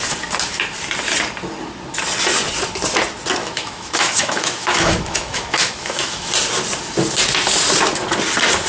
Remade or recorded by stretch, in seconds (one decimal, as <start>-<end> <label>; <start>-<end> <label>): 0.0-3.4 recorded; 3.4-6.3 remade; 6.3-8.7 recorded